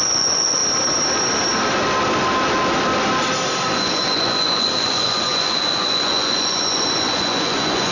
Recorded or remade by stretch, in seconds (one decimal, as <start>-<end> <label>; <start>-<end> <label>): 0.0-0.6 remade; 0.6-3.7 recorded; 3.7-7.9 remade